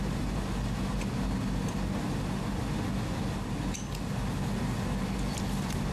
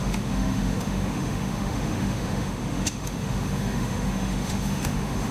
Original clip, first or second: first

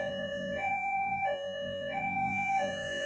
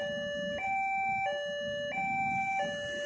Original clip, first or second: second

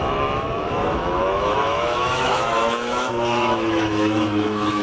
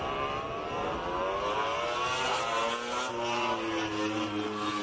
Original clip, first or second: second